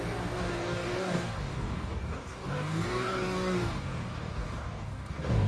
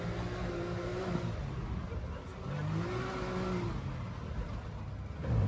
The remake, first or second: first